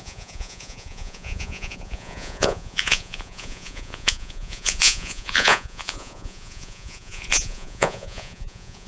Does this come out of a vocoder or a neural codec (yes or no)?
yes